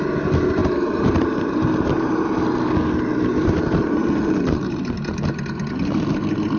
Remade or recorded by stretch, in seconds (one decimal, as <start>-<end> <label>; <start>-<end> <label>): 0.0-0.6 recorded; 0.6-2.3 remade; 2.3-3.3 recorded; 3.3-4.2 remade; 4.2-6.6 recorded